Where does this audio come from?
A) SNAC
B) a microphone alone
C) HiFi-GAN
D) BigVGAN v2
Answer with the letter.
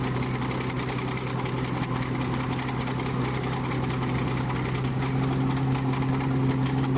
B